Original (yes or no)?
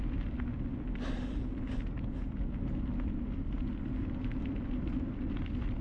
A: yes